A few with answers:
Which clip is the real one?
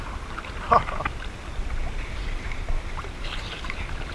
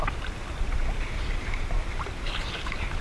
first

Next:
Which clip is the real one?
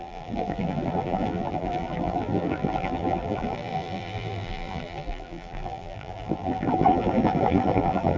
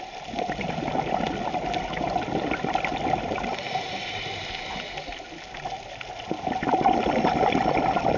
second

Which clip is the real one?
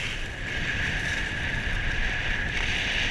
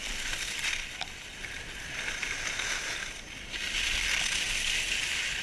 second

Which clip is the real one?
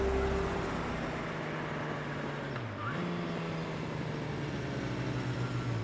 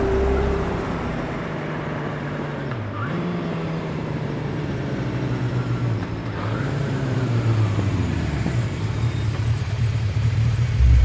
first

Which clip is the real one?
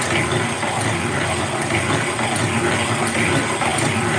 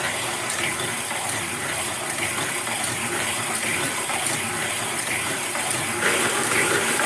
first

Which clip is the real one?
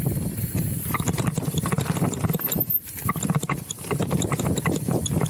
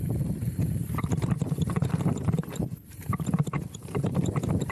first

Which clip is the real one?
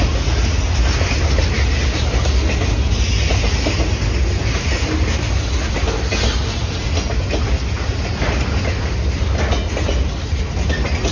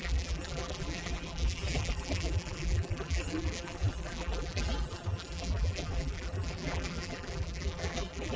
first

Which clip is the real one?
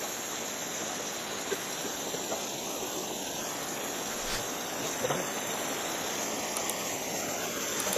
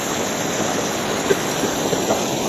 first